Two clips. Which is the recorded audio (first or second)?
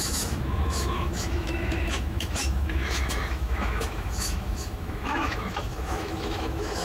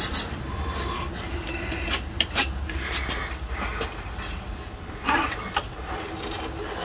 second